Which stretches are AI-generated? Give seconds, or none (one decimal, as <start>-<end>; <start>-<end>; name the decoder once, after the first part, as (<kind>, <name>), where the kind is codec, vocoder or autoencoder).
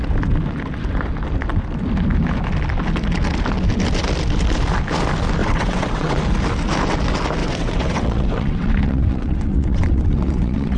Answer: 5.4-6.2 (vocoder, WaveNeXt); 7.4-10.8